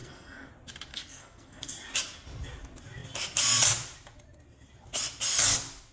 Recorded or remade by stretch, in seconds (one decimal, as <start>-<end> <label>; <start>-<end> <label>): 0.0-0.5 remade; 0.5-0.9 recorded; 0.9-1.7 remade; 1.7-5.9 recorded